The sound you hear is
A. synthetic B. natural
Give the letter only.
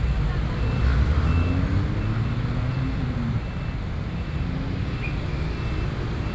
B